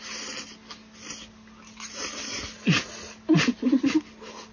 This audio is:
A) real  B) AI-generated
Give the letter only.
A